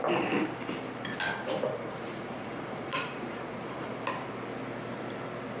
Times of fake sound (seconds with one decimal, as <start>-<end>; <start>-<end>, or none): 2.0-3.9